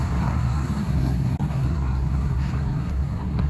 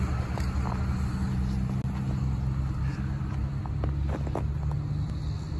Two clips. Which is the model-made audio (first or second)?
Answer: first